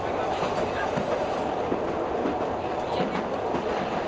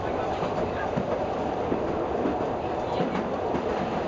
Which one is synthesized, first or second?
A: second